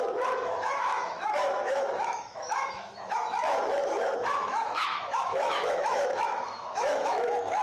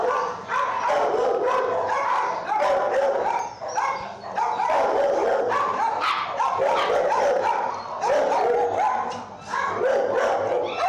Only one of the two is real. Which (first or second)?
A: second